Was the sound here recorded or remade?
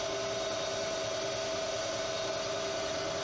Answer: recorded